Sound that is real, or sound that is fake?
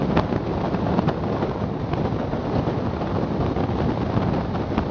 real